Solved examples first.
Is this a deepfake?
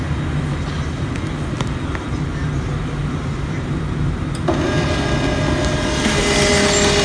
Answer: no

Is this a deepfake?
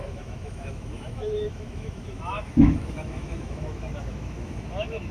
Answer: yes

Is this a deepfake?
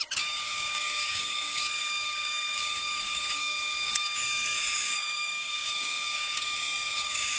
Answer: yes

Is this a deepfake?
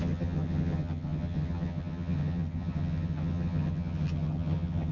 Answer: yes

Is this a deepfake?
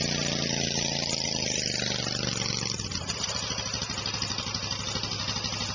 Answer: no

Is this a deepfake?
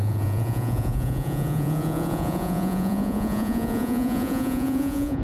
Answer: yes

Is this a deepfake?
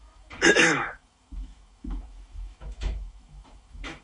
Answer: yes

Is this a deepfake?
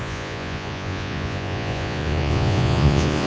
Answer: yes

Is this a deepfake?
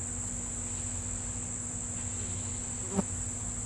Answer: no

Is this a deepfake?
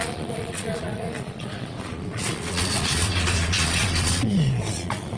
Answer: yes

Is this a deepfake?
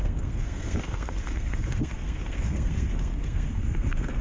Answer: yes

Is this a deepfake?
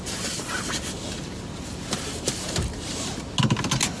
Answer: no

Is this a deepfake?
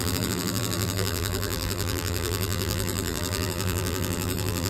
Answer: yes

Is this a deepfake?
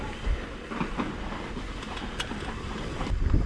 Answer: no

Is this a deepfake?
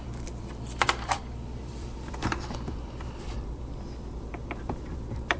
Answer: yes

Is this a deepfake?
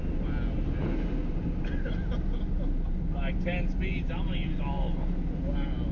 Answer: no